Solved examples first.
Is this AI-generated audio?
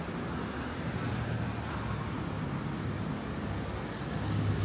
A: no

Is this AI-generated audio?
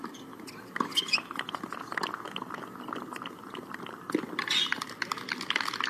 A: no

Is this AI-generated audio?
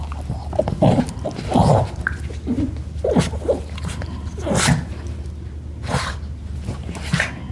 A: no